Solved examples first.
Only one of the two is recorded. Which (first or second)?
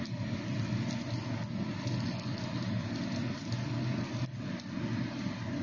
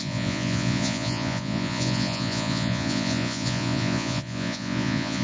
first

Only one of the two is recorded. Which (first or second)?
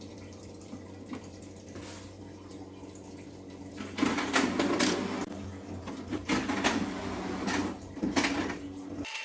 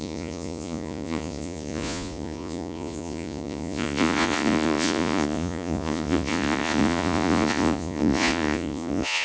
first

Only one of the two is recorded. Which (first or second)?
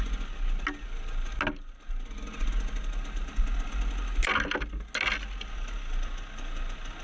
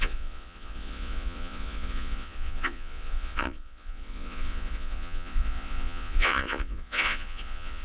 first